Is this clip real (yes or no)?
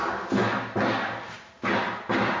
yes